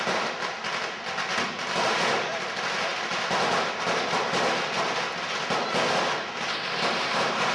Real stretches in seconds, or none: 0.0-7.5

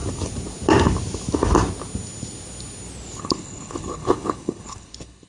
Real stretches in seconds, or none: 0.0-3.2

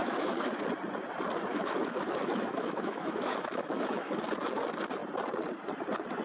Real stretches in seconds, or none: 0.6-1.5; 4.2-6.2

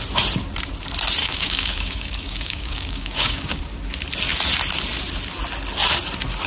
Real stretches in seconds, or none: 0.0-1.2; 3.6-6.5

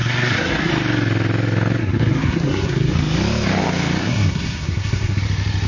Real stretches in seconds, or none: 0.7-1.8; 2.9-4.0; 5.2-5.7